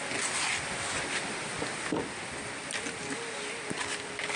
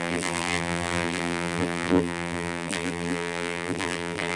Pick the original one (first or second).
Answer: first